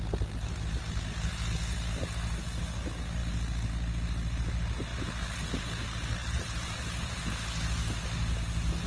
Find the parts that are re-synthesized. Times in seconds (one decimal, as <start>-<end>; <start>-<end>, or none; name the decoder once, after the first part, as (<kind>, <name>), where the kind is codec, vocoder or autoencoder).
6.2-7.2 (vocoder, BigVGAN v2)